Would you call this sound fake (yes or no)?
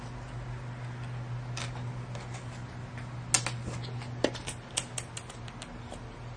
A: no